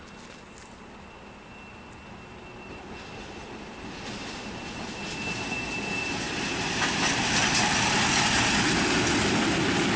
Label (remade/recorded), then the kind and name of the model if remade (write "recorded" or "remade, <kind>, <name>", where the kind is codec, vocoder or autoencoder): recorded